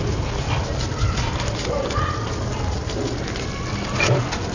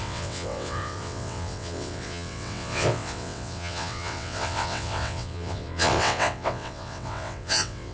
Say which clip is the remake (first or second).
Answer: second